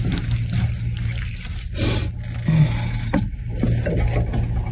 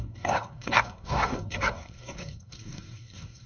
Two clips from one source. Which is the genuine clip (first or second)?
first